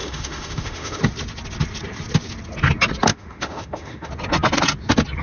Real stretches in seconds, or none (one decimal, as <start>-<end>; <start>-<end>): 1.0-3.1; 4.1-5.2

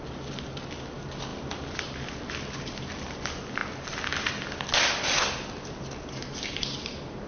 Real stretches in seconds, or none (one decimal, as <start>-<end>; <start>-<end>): 0.0-7.3